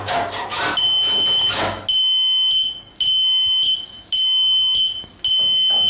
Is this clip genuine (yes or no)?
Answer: yes